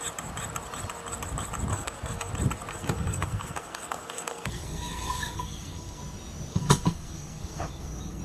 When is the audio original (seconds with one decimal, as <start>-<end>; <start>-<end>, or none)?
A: 0.0-1.7; 2.3-2.7; 6.0-6.5

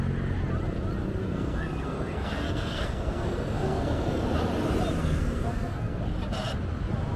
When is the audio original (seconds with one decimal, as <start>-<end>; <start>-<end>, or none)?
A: 0.0-1.2; 4.2-5.0; 6.0-7.2